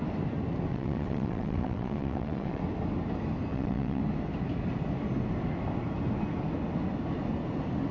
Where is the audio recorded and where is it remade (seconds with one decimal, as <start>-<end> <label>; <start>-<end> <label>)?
0.0-0.7 recorded; 0.7-2.6 remade; 2.6-3.5 recorded; 3.5-4.0 remade; 4.0-7.9 recorded